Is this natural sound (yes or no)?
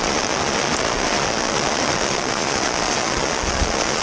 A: no